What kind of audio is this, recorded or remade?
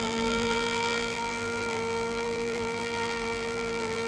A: remade